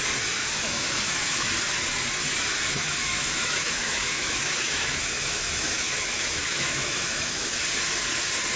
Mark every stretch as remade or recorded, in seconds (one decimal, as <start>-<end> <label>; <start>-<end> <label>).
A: 0.0-0.4 recorded; 0.4-1.5 remade; 1.5-2.7 recorded; 2.7-7.5 remade; 7.5-8.6 recorded